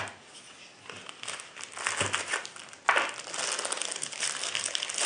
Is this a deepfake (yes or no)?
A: no